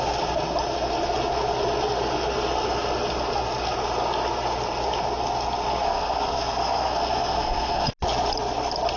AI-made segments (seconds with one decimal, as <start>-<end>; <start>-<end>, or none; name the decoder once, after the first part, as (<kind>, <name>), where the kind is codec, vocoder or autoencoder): 5.7-7.9 (codec, SNAC)